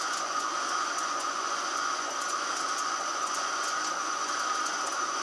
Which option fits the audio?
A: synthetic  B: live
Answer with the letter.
A